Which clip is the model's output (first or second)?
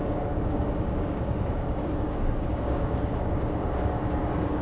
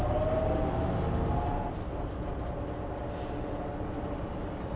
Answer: first